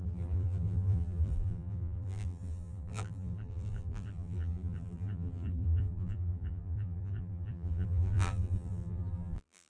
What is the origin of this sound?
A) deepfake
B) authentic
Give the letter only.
A